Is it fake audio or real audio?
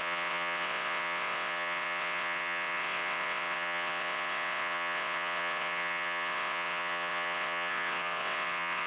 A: fake